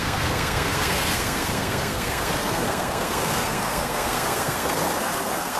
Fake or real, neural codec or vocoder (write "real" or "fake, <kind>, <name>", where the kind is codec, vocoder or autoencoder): fake, codec, SNAC